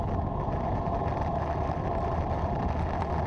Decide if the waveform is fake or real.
real